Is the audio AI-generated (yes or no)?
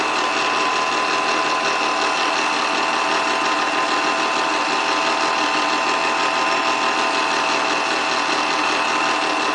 no